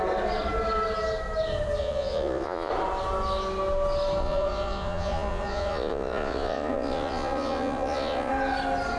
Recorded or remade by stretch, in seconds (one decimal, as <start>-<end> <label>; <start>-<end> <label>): 0.0-1.8 recorded; 1.8-2.7 remade; 2.7-4.2 recorded; 4.2-8.3 remade; 8.3-9.0 recorded